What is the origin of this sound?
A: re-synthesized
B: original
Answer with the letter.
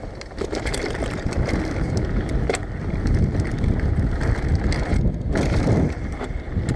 B